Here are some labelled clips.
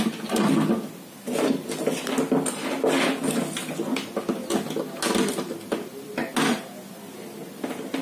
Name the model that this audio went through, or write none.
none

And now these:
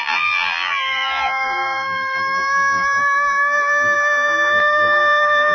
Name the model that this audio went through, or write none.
vocoder, BigVGAN v2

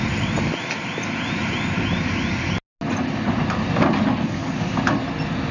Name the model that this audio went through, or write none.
none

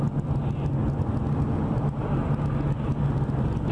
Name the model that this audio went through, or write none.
none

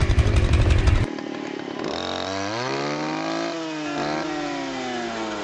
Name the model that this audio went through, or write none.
none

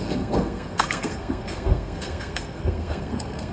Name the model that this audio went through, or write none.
codec, SNAC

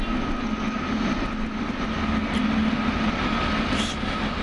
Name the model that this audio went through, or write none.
none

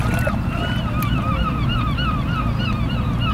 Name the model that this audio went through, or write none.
none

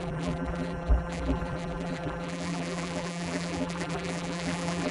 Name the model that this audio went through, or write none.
vocoder, BigVGAN v2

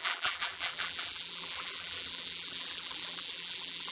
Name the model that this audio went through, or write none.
vocoder, BigVGAN v2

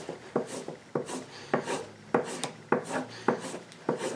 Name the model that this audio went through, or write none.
none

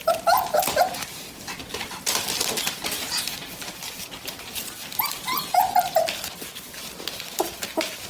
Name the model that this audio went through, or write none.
none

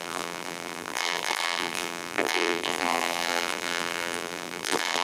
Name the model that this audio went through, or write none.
vocoder, BigVGAN v2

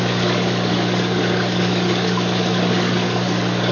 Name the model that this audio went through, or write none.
codec, DAC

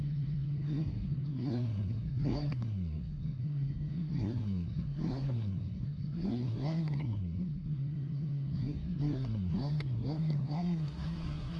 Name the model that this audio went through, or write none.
codec, SNAC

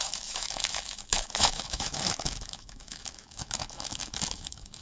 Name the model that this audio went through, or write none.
autoencoder, DAC-VAE